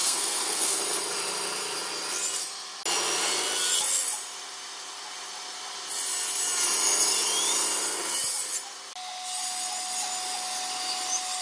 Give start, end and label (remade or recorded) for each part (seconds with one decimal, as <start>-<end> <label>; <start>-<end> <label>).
0.0-0.8 remade; 0.8-11.4 recorded